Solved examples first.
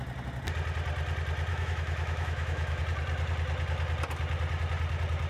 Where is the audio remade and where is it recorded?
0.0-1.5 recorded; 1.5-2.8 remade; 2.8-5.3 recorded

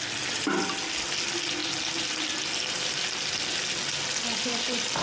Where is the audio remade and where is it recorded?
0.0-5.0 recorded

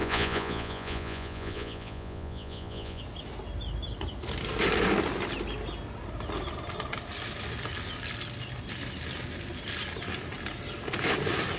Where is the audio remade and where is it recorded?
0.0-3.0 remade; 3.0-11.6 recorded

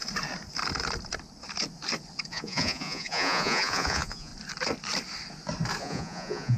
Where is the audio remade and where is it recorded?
0.0-2.3 recorded; 2.3-4.3 remade; 4.3-5.8 recorded; 5.8-6.6 remade

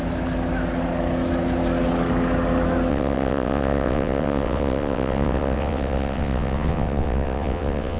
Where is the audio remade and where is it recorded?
0.0-2.9 recorded; 2.9-8.0 remade